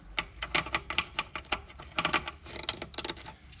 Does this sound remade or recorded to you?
recorded